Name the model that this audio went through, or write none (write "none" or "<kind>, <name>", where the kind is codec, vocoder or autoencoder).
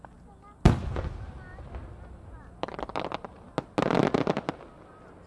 none